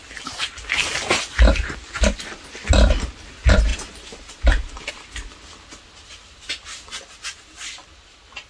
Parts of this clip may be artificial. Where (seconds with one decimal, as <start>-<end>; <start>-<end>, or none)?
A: none